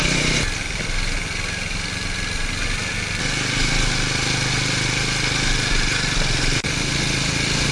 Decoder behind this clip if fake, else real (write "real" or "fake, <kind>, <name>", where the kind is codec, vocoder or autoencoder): real